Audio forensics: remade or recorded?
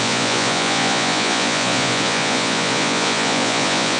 remade